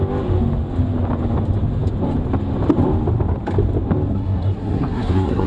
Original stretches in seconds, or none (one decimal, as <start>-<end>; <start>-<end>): 0.0-4.1